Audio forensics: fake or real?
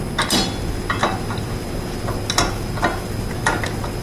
real